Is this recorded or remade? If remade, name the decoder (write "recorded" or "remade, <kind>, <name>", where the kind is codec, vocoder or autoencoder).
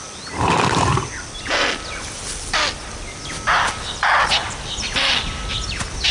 recorded